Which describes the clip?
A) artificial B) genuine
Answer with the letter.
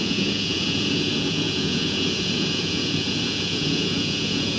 A